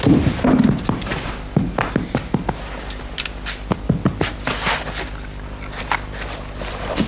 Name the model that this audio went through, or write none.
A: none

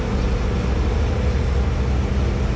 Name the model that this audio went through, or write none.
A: none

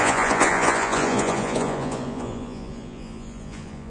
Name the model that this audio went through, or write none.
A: vocoder, Vocos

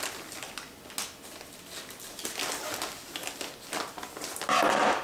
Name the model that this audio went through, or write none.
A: none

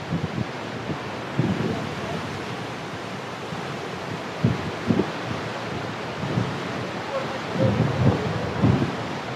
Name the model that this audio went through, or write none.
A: none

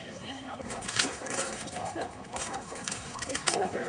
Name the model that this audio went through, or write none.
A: codec, SNAC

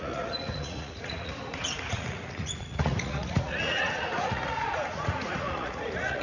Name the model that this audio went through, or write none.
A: vocoder, Vocos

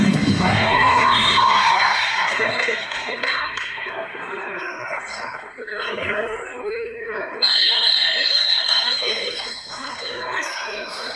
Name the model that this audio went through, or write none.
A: codec, SNAC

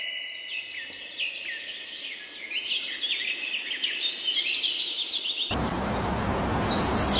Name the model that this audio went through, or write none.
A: none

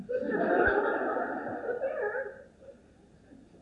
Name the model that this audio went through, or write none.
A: none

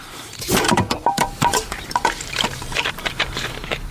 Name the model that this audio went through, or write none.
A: vocoder, BigVGAN v2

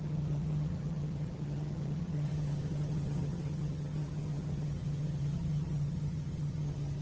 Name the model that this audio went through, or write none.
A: vocoder, HiFi-GAN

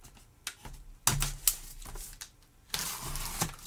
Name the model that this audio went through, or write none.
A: none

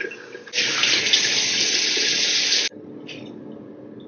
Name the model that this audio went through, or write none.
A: none